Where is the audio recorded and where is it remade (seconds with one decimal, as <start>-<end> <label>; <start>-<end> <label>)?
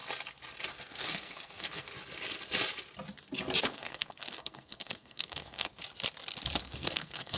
0.0-0.7 recorded; 0.7-1.9 remade; 1.9-3.6 recorded; 3.6-5.7 remade; 5.7-6.6 recorded; 6.6-7.4 remade